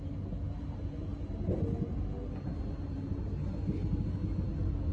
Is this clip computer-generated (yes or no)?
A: no